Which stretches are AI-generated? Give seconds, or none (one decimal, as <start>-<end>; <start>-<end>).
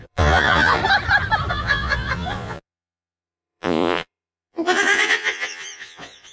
0.0-0.8; 1.5-6.3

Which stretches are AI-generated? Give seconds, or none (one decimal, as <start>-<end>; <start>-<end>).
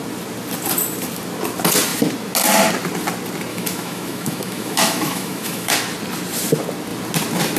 3.5-5.7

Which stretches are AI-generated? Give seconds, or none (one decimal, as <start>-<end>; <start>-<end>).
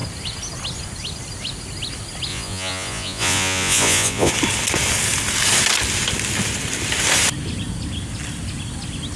2.3-4.3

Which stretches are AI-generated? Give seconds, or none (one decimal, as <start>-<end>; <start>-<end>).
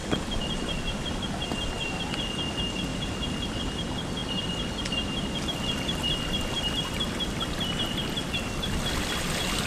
none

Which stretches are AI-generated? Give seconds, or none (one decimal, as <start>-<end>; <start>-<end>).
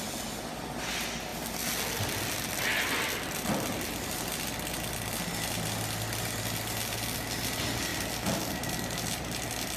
none